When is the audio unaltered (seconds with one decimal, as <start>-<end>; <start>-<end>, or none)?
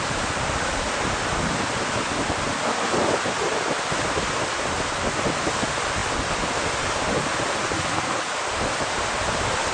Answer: 0.0-9.7